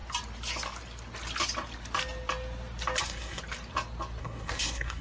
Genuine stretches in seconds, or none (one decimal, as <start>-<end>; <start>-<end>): 0.0-3.0; 3.4-4.2

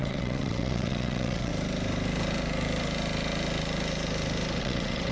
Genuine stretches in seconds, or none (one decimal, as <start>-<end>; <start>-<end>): 1.5-4.6

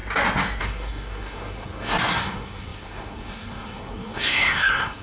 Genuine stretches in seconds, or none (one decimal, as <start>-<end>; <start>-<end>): 0.0-0.6

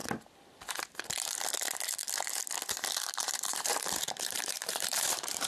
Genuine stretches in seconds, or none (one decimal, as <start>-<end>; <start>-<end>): 0.0-3.2

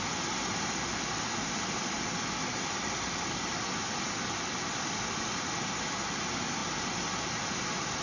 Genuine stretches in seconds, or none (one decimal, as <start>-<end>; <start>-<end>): 0.0-8.0

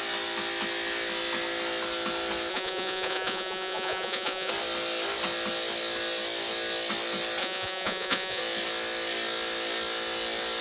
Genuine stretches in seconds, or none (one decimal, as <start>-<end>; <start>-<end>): 0.0-2.5; 4.5-7.4; 8.4-10.6

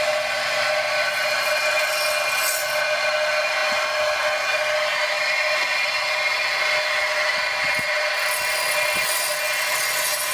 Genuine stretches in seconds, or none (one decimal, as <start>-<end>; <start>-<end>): 0.0-10.3